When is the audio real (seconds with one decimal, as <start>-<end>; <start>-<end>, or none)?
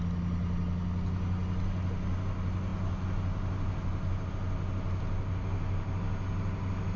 0.0-7.0